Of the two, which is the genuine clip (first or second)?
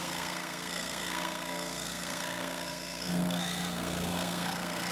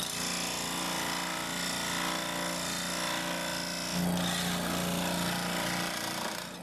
second